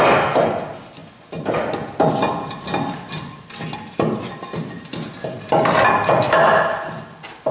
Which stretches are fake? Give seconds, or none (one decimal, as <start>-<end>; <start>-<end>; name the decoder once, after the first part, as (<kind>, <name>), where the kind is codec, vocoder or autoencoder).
none